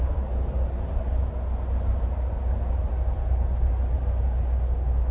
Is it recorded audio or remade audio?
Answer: recorded